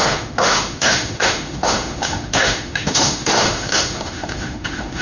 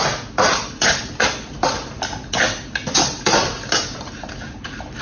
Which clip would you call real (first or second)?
second